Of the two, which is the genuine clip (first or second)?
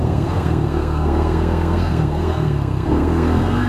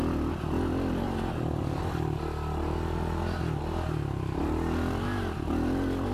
second